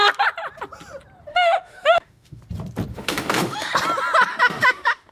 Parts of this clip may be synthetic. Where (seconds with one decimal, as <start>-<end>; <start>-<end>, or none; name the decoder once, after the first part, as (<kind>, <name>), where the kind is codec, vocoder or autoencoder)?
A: 1.3-2.4 (autoencoder, DAC-VAE); 2.9-3.7; 4.3-5.1